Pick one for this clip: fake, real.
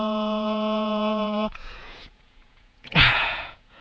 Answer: fake